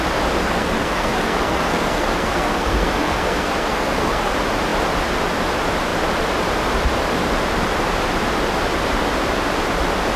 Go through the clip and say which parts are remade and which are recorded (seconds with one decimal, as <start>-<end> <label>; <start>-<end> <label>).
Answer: 0.0-0.4 recorded; 0.4-4.3 remade; 4.3-10.2 recorded